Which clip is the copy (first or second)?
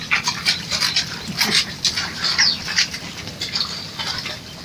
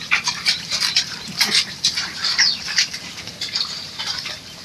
second